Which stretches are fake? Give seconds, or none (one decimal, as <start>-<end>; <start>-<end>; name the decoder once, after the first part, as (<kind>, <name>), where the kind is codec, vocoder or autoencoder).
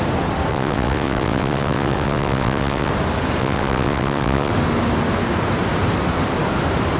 0.5-2.9 (vocoder, WaveNeXt); 3.4-4.5